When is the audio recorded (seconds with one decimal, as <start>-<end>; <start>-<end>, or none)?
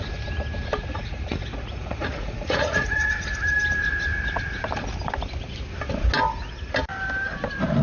0.0-0.9; 3.1-7.8